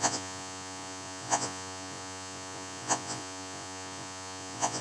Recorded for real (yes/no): no